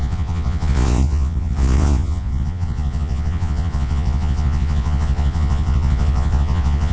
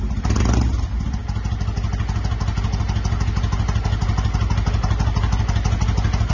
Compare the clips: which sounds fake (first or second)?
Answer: first